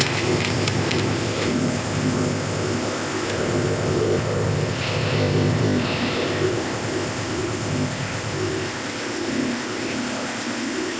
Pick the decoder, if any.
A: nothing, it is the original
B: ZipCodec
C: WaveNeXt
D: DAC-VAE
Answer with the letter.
B